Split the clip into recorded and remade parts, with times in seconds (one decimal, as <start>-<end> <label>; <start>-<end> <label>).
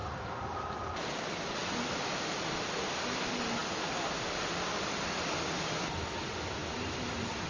0.0-7.5 recorded